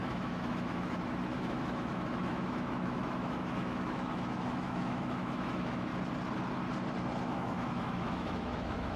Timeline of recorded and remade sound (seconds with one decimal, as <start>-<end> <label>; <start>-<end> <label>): 0.0-5.9 remade; 5.9-7.2 recorded; 7.2-9.0 remade